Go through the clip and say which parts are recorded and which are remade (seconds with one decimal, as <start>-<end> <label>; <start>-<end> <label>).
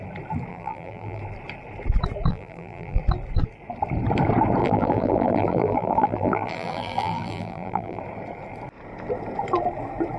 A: 0.0-0.5 recorded; 0.5-1.2 remade; 1.2-2.3 recorded; 2.3-3.0 remade; 3.0-4.6 recorded; 4.6-8.0 remade; 8.0-10.2 recorded